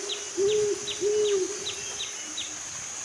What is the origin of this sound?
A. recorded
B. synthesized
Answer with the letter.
A